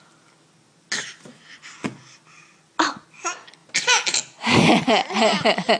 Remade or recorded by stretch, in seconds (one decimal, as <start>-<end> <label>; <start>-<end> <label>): 0.0-1.3 recorded; 1.3-2.0 remade; 2.0-5.8 recorded